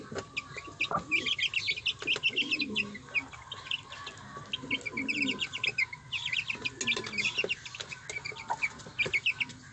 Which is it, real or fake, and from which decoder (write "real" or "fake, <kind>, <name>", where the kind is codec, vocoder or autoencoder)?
real